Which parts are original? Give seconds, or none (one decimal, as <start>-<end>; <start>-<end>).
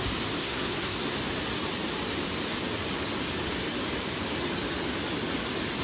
0.0-0.4; 1.1-5.8